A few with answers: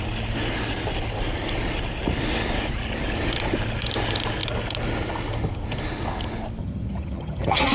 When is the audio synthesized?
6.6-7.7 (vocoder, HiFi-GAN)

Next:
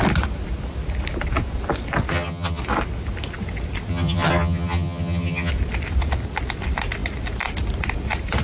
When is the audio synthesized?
2.1-2.6 (vocoder, HiFi-GAN); 3.9-5.5